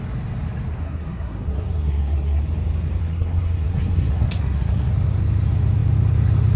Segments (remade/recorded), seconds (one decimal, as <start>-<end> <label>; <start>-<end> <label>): 0.0-0.8 recorded; 0.8-2.4 remade; 2.4-3.0 recorded; 3.0-4.9 remade; 4.9-6.6 recorded